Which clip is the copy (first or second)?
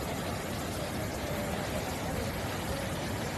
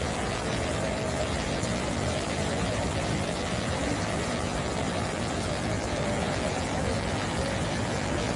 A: second